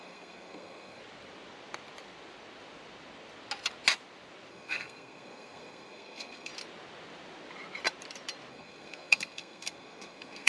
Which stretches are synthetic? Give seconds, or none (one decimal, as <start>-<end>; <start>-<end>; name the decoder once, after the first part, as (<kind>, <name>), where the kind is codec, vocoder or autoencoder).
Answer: 0.0-1.0 (codec, SNAC); 4.5-6.5; 8.5-10.5